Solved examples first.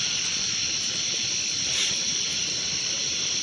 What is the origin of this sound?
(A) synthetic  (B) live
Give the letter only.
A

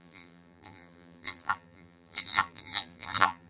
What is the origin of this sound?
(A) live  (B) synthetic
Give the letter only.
B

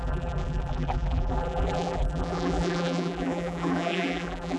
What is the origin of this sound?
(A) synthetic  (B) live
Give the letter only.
A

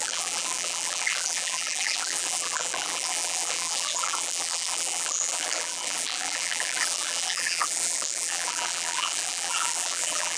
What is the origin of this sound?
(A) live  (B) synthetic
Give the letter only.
B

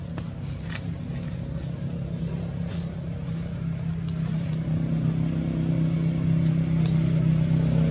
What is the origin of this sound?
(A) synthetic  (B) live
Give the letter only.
B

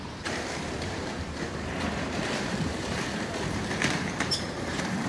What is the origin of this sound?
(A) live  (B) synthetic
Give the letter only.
B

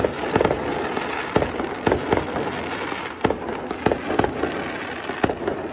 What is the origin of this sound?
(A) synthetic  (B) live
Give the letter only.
B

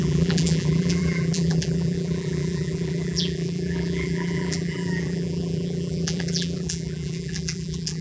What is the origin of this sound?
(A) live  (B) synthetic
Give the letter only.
B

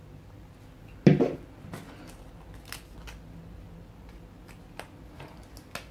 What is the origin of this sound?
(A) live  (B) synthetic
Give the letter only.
A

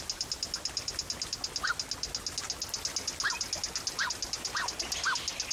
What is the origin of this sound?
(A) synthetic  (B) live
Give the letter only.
B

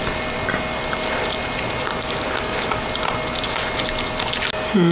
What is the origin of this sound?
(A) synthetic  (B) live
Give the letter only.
B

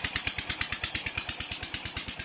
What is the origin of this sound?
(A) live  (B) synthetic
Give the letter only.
B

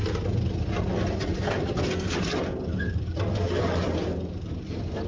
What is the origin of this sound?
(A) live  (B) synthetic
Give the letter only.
A